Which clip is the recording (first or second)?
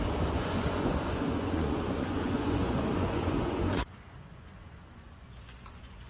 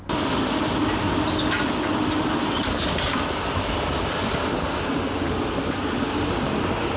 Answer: second